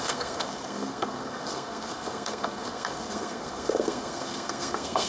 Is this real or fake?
fake